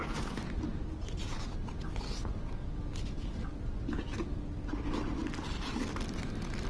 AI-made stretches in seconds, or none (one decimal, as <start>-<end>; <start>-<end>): none